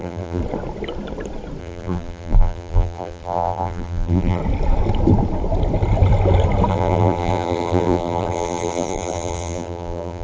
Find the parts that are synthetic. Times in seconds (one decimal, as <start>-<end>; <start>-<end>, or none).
0.0-0.4; 1.6-4.4; 6.7-10.2